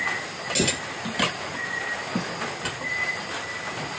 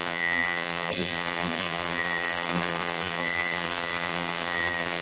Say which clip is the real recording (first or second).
first